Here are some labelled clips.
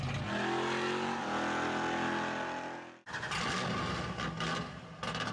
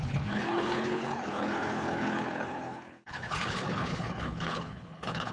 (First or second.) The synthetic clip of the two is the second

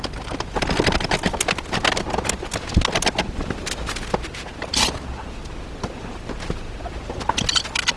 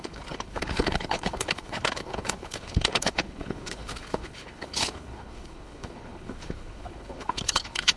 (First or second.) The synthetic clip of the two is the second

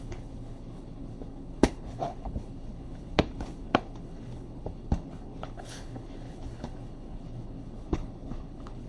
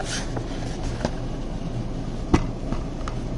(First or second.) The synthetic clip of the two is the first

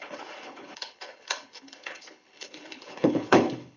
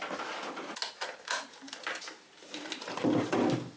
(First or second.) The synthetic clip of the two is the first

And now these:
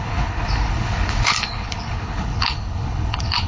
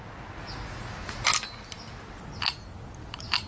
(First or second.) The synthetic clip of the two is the first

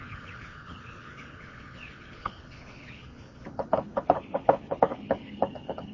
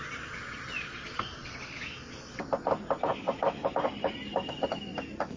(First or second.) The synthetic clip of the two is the first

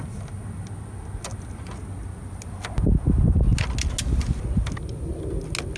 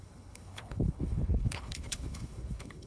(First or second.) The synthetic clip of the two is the second